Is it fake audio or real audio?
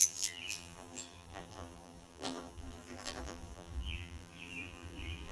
fake